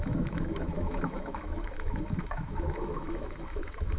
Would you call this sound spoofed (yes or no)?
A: yes